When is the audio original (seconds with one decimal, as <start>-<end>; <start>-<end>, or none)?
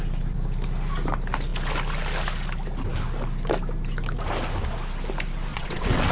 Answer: 0.0-5.5